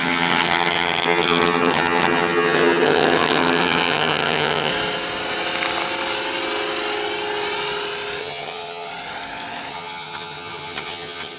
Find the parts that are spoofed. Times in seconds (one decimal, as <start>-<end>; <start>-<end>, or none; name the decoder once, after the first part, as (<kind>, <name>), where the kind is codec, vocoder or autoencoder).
0.0-4.7 (vocoder, HiFi-GAN); 8.2-8.9; 9.7-11.4